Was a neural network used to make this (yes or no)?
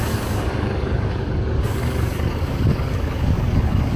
yes